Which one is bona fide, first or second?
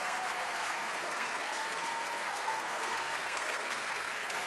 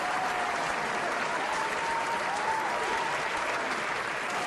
second